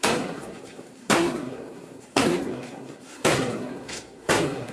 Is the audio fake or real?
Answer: fake